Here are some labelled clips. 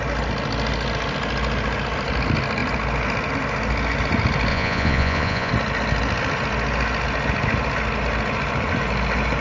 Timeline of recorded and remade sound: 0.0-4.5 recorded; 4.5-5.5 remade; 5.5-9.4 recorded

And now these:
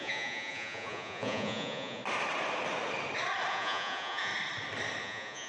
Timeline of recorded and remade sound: 0.0-2.0 remade; 2.0-3.5 recorded; 3.5-4.3 remade; 4.3-5.0 recorded; 5.0-5.5 remade

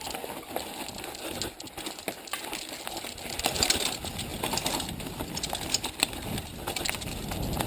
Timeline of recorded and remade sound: 0.0-7.7 recorded

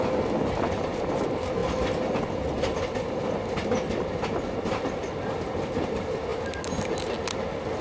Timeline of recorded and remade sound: 0.0-7.8 recorded

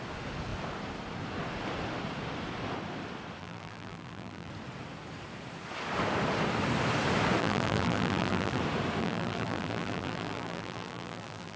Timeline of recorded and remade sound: 0.0-3.4 recorded; 3.4-4.5 remade; 4.5-7.4 recorded; 7.4-8.6 remade; 8.6-9.0 recorded; 9.0-11.6 remade

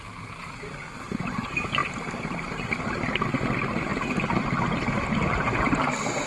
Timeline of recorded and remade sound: 0.0-6.3 recorded